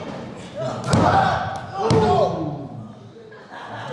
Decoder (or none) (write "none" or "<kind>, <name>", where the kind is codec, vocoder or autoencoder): none